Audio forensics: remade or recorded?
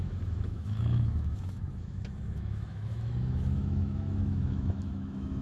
remade